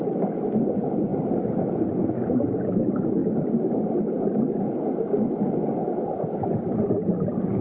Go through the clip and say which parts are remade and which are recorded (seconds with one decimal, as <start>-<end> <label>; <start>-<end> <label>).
0.0-7.6 recorded